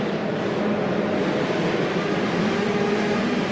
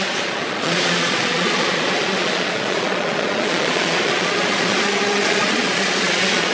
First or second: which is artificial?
second